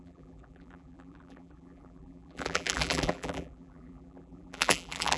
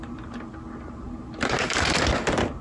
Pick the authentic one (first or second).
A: second